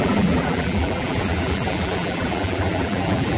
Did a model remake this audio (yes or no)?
yes